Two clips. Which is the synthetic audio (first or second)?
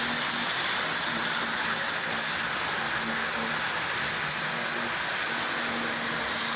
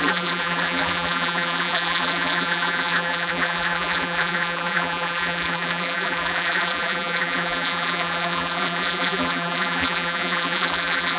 second